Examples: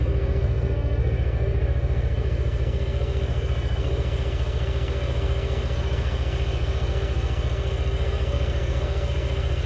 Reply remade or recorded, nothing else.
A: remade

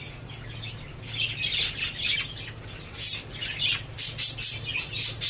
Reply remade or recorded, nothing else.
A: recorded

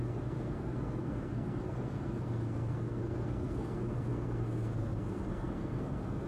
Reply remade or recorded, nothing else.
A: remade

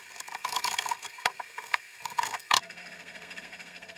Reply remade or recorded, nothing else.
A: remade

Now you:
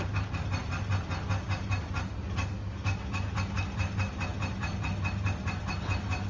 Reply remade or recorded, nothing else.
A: recorded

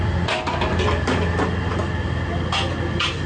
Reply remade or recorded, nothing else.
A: recorded